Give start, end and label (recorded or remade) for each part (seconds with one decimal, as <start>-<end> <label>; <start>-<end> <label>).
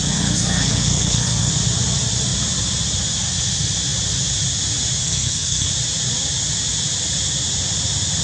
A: 0.0-1.5 remade; 1.5-5.0 recorded; 5.0-5.7 remade; 5.7-8.2 recorded